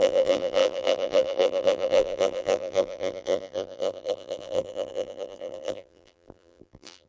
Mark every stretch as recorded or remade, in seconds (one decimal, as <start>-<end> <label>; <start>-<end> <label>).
0.0-7.1 remade